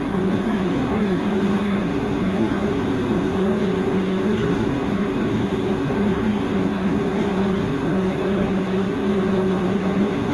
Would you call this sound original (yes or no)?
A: no